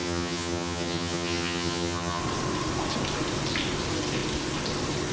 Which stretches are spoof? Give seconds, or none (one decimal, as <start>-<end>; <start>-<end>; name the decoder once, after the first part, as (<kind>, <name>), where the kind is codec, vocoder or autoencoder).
0.0-2.2 (vocoder, HiFi-GAN)

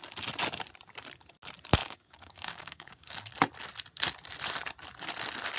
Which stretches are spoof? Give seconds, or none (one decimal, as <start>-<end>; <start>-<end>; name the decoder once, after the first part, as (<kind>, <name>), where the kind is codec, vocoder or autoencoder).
1.8-3.3 (codec, DAC)